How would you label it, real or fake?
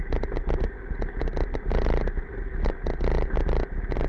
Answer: real